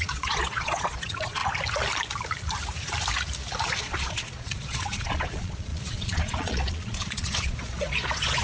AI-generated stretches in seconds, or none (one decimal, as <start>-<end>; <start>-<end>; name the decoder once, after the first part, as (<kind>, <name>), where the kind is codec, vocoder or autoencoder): 0.0-1.4 (vocoder, Vocos); 3.8-8.4